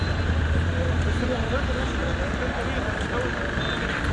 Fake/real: real